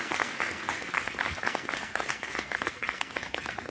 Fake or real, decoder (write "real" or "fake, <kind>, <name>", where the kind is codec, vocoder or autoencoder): fake, codec, SNAC